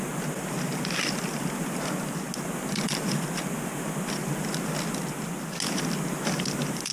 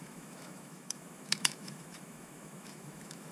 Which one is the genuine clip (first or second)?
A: first